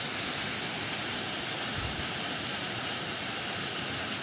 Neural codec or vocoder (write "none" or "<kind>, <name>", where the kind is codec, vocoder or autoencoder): none